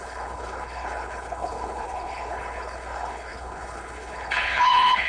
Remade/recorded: remade